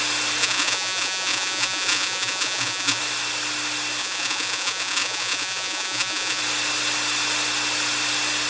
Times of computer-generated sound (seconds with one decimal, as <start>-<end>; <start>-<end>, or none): 0.4-3.0; 4.0-6.4